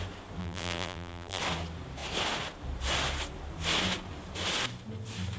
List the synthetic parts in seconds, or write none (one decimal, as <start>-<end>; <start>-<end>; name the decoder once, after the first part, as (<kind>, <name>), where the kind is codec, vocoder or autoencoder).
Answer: 0.4-1.4 (vocoder, BigVGAN v2)